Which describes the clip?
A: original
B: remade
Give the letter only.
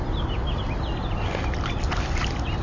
A